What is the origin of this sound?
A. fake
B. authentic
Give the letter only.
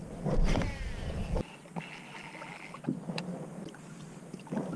B